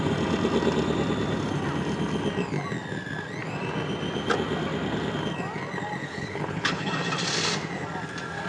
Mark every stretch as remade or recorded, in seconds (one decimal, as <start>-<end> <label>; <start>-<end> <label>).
0.0-6.0 recorded; 6.0-6.9 remade; 6.9-8.5 recorded